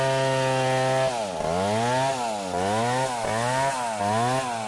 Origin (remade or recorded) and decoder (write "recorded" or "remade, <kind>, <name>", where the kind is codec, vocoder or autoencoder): recorded